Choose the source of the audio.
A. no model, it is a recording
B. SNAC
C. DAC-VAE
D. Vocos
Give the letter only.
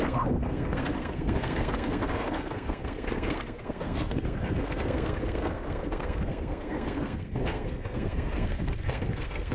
B